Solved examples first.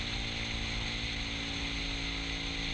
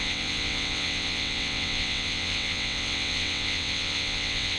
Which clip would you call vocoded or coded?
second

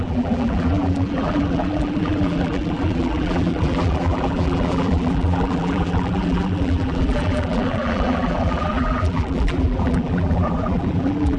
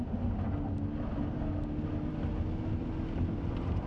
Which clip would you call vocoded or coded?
first